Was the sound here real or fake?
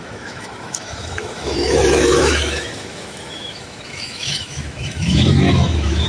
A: fake